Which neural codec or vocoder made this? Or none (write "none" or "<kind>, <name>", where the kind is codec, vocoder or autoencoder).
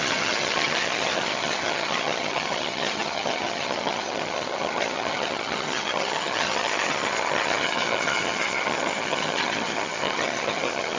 vocoder, HiFi-GAN